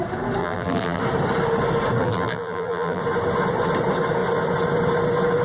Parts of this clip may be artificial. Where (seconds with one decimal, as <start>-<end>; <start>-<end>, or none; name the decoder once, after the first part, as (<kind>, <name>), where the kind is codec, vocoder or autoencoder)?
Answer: 0.4-1.0 (vocoder, BigVGAN v2); 2.0-3.0